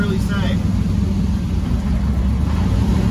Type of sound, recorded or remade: recorded